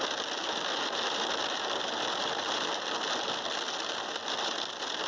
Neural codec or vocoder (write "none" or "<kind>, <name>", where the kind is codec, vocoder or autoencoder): none